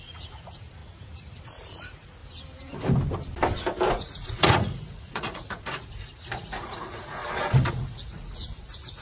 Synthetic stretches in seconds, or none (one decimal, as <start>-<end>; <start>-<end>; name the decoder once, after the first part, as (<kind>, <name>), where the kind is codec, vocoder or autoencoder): 0.0-2.2 (vocoder, Vocos); 3.9-7.2; 7.7-9.0